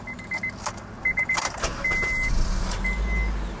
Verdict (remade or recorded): recorded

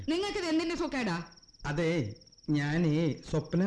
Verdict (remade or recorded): recorded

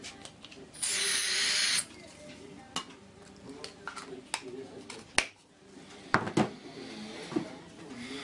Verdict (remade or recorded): recorded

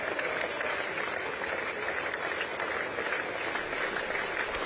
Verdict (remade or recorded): recorded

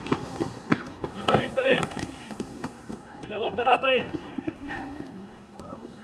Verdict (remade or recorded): remade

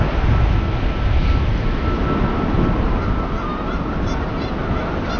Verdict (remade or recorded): recorded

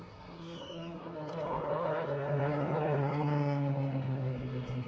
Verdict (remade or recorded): remade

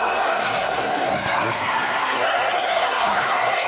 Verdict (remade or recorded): remade